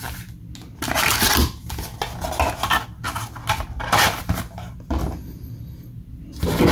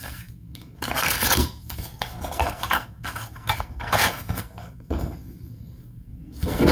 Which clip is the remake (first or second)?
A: second